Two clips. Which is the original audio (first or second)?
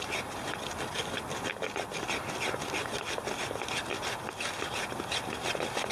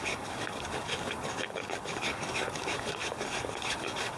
first